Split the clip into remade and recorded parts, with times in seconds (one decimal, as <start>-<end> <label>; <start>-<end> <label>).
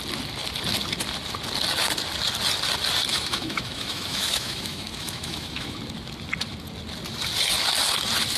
0.0-3.1 recorded; 3.1-5.8 remade; 5.8-8.4 recorded